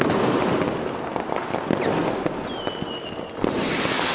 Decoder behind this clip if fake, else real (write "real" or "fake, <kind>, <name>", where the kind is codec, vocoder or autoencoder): real